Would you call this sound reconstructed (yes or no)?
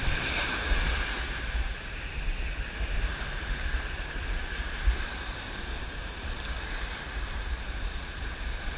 yes